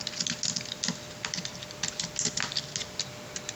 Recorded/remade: recorded